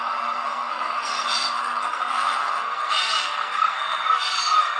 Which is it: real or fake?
fake